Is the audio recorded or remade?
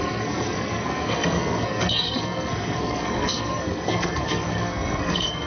remade